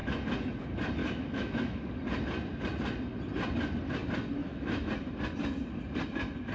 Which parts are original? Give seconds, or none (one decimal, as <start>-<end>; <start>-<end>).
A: 0.0-1.0; 1.8-4.4; 4.9-6.5